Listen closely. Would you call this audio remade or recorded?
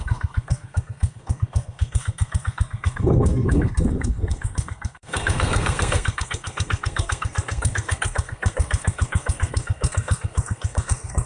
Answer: remade